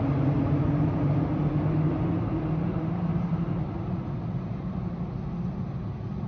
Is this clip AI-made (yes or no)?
no